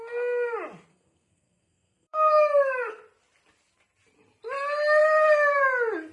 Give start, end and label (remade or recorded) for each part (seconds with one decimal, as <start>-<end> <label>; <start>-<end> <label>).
0.0-0.9 recorded; 0.9-2.3 remade; 2.3-6.1 recorded

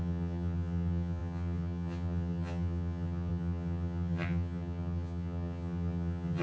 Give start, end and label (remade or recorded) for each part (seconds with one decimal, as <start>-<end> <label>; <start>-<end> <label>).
0.0-6.4 remade